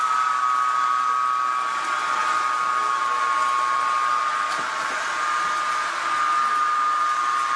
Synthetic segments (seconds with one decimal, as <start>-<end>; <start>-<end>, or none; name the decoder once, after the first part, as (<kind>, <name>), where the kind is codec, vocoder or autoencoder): none

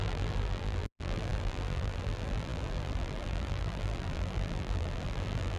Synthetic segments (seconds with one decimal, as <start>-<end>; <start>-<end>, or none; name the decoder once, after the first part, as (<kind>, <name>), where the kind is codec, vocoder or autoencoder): 0.0-5.6 (vocoder, BigVGAN v2)

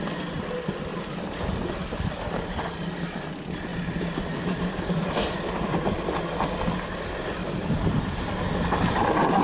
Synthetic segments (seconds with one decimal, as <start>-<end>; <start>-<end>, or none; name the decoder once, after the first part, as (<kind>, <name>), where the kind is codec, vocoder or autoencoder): 0.9-2.6 (vocoder, BigVGAN v2); 3.7-5.2; 7.4-8.3